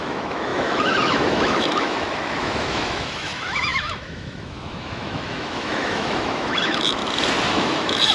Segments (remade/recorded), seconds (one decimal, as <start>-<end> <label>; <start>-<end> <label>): 0.0-7.0 remade; 7.0-7.5 recorded; 7.5-8.1 remade